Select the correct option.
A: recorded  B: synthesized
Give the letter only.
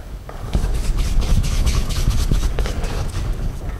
B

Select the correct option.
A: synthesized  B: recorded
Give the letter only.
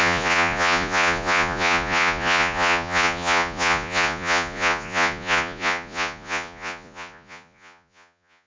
A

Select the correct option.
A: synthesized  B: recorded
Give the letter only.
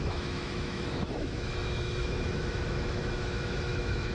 A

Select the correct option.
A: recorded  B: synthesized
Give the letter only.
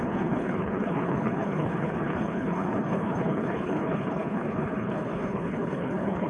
B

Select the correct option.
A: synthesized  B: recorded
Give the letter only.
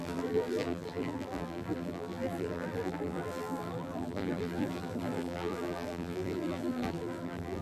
A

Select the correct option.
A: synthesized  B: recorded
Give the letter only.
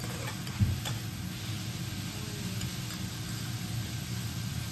B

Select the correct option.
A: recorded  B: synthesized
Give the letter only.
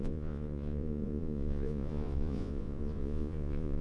B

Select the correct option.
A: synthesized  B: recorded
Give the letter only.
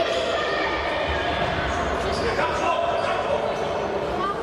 A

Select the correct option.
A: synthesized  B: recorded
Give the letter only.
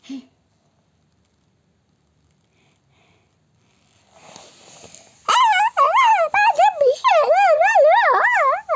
B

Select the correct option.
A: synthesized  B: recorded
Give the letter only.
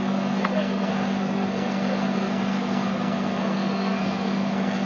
A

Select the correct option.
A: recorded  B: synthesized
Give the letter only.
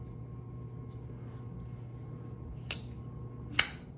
A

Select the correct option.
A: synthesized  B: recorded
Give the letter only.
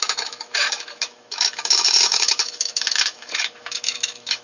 A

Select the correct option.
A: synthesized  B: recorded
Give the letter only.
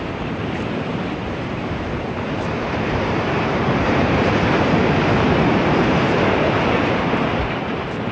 A